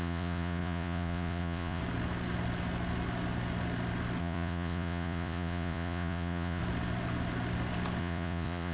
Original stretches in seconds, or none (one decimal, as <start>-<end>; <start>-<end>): 1.8-4.2; 6.6-8.0